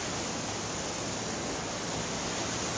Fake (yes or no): no